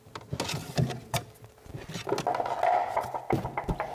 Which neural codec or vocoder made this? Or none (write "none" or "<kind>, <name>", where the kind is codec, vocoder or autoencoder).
none